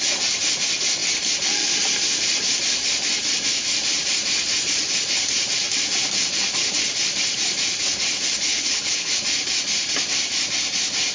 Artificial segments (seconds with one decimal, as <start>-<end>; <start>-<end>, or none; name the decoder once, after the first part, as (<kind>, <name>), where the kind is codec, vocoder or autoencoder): 8.5-9.1 (codec, HILCodec)